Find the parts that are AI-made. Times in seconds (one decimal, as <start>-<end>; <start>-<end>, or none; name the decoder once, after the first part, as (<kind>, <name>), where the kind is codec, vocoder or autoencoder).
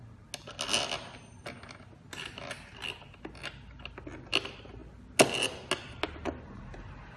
none